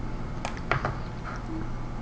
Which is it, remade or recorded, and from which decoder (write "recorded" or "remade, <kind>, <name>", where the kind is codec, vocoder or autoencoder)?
recorded